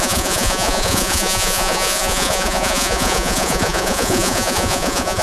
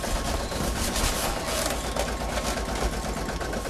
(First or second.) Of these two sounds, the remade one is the first